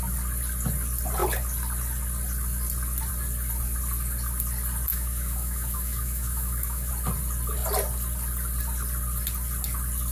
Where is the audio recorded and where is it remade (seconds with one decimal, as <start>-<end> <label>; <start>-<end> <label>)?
0.0-4.9 recorded; 4.9-6.9 remade; 6.9-10.1 recorded